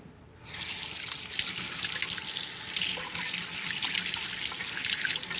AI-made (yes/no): no